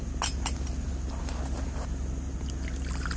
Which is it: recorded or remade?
recorded